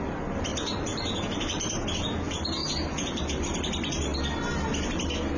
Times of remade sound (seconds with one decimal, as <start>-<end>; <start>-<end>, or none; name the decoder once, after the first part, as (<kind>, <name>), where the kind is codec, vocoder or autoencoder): 0.5-1.7 (vocoder, BigVGAN v2); 2.6-3.4